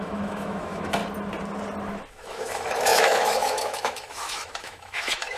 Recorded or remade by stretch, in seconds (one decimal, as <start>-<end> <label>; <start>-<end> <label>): 0.0-1.0 remade; 1.0-2.1 recorded; 2.1-5.4 remade